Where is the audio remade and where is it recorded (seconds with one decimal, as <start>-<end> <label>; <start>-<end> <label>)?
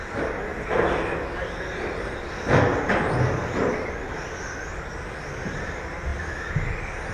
0.0-7.1 recorded